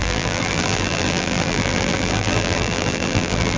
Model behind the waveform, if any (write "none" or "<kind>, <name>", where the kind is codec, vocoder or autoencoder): vocoder, BigVGAN v2